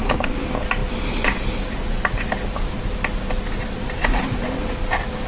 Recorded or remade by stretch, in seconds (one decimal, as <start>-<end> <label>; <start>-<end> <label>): 0.0-5.3 recorded